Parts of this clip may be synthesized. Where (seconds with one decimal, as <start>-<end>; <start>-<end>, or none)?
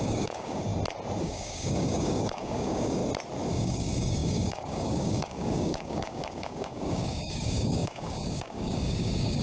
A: 0.0-0.7; 1.2-3.0; 3.5-9.4